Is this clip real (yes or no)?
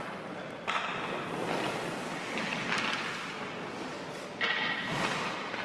yes